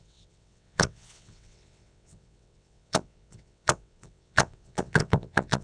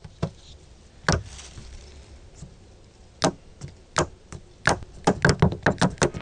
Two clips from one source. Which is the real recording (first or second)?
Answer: second